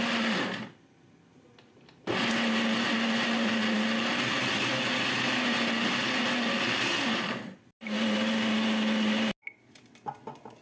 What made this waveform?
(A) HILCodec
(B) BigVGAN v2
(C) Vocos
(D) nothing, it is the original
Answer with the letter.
D